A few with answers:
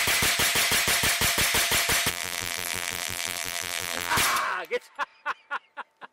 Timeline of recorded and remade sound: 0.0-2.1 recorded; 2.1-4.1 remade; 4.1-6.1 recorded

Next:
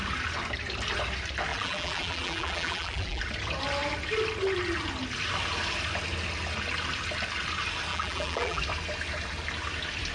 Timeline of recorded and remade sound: 0.0-1.5 recorded; 1.5-3.2 remade; 3.2-7.9 recorded; 7.9-8.6 remade; 8.6-10.1 recorded